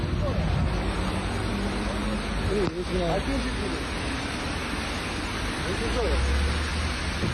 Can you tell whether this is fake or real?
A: real